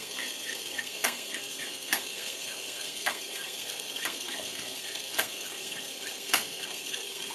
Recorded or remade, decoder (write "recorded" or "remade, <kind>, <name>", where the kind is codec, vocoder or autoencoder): remade, codec, SNAC